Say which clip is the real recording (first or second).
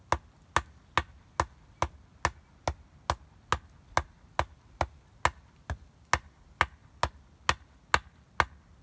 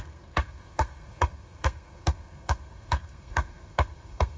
first